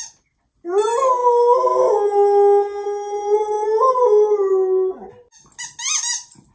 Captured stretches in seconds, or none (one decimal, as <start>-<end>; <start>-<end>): 0.0-6.5